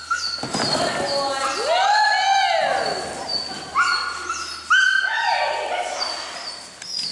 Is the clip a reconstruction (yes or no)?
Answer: no